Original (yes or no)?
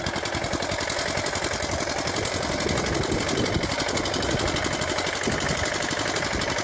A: no